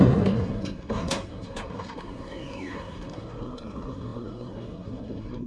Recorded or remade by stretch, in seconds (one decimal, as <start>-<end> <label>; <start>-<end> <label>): 0.0-5.5 remade